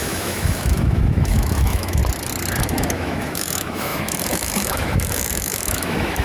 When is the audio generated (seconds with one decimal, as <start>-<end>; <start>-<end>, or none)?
0.0-2.0; 2.6-6.2